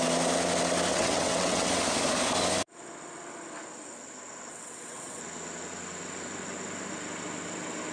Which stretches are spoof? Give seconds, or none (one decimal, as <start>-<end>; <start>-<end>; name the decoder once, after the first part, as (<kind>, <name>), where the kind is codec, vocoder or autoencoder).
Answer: 0.9-1.7 (vocoder, WaveNeXt); 4.5-5.2